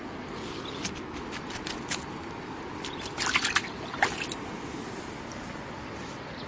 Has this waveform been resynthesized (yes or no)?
no